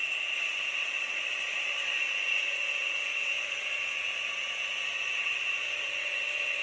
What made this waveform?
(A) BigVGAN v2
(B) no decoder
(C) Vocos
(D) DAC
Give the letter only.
C